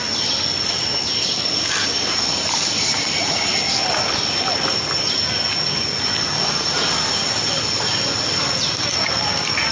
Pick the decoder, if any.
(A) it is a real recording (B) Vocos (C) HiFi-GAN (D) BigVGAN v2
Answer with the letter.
A